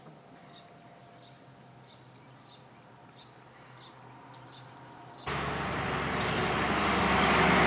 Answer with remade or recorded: recorded